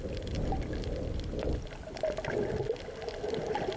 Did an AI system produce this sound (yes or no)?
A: no